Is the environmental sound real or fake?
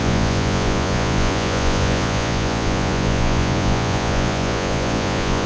fake